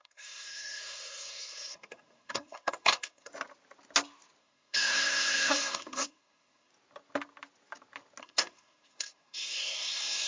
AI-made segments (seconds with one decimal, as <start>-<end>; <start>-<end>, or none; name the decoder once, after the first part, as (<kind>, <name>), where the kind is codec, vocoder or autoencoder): 0.0-3.3 (codec, SNAC); 4.4-6.7; 8.2-10.3